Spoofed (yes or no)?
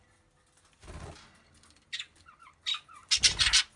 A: no